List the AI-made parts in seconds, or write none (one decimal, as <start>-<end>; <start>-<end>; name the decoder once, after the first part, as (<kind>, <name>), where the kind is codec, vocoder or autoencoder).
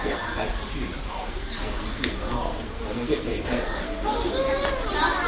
0.0-0.6 (codec, SNAC); 1.1-4.3